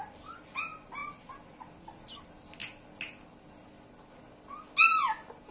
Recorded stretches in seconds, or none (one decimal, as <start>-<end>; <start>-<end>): 0.0-5.5